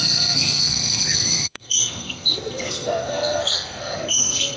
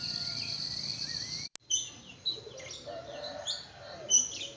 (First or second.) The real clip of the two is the second